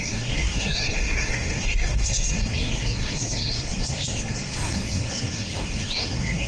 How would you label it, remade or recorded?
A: remade